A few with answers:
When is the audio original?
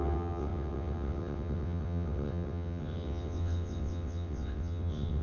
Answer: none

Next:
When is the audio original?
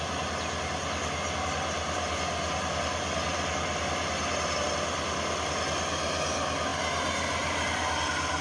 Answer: 0.0-8.4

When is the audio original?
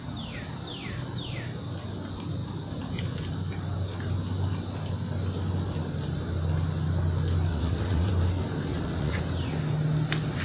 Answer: 0.0-7.5; 8.1-8.7; 9.2-10.4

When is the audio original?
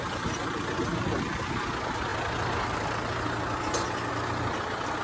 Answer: 0.0-5.0